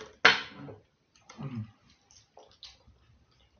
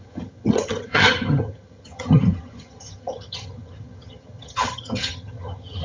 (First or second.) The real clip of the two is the first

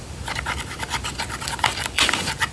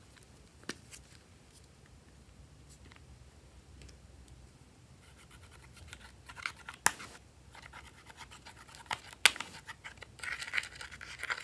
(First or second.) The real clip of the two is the second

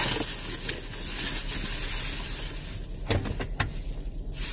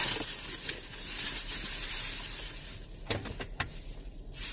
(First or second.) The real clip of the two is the first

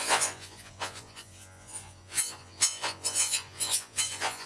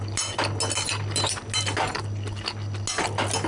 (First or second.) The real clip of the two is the second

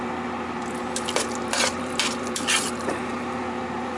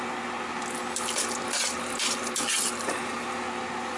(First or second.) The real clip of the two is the second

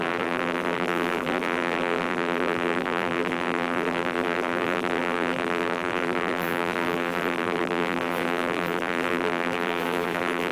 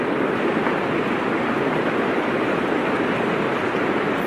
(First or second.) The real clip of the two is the second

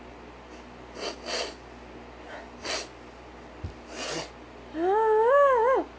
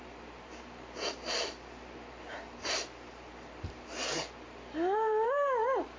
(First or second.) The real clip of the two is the first